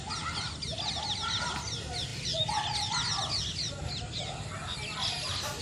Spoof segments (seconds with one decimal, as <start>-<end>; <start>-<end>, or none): none